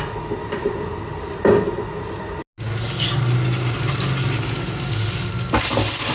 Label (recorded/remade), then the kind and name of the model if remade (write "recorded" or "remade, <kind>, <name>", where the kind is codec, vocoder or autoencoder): recorded